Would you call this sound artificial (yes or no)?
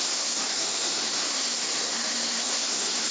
yes